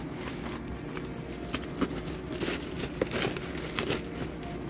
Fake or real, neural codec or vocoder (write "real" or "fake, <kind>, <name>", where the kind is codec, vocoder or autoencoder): real